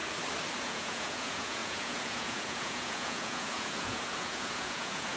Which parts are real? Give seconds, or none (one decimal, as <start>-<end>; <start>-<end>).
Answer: 0.0-0.6